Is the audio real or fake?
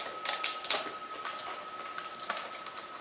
real